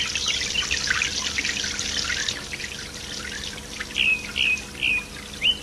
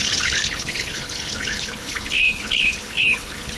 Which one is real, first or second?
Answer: first